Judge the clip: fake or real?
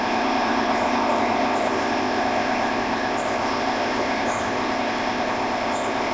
fake